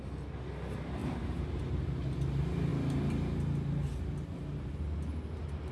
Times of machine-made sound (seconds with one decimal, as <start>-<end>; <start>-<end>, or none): 1.0-1.6